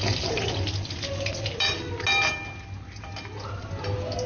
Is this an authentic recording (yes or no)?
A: yes